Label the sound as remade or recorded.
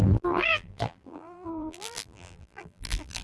remade